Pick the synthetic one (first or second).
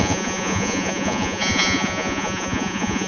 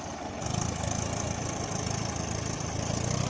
first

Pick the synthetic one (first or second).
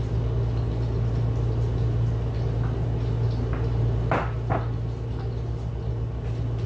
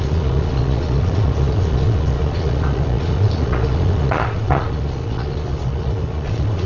second